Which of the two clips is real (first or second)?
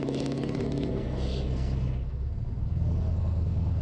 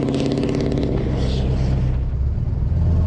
second